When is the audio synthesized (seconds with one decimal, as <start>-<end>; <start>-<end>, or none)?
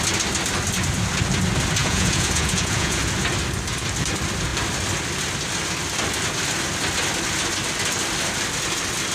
1.8-3.0